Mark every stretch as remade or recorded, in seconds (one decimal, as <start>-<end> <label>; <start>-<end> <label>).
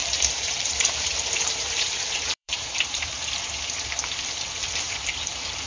0.0-3.4 remade; 3.4-5.7 recorded